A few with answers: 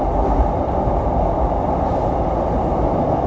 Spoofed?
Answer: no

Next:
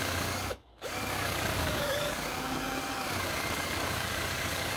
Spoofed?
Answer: yes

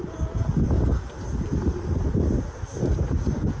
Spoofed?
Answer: no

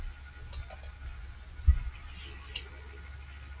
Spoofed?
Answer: no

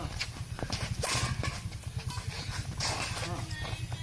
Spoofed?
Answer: no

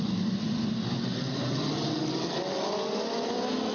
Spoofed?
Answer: no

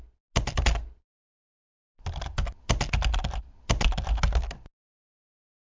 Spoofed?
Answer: no